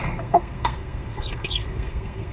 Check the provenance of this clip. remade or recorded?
remade